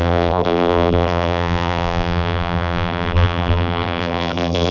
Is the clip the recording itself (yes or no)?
no